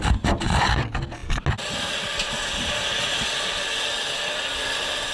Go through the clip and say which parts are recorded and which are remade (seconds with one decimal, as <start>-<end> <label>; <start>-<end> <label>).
0.0-5.1 recorded